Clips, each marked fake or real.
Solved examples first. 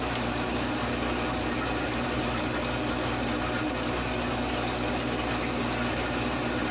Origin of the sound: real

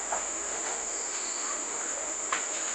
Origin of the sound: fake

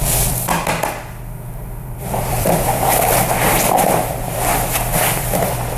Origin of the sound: fake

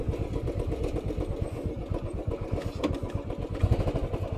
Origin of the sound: real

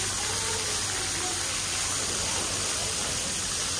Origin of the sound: real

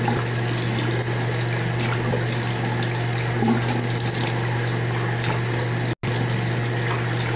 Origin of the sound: real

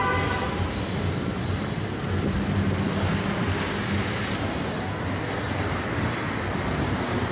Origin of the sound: real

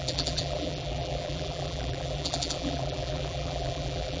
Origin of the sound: fake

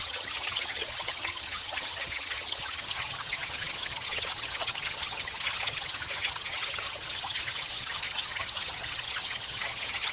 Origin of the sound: fake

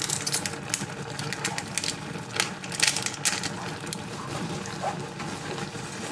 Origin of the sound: real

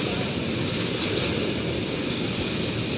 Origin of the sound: real